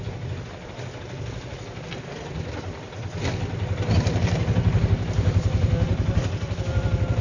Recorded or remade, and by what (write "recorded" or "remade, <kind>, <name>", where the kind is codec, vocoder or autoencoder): recorded